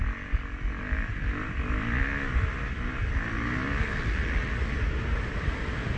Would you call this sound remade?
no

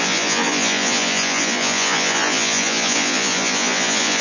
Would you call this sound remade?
yes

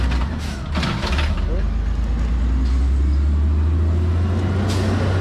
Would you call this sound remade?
no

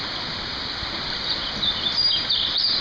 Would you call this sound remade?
no